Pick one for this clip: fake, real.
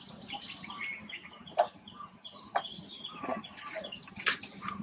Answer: real